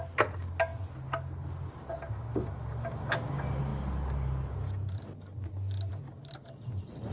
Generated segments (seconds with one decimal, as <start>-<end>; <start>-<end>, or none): none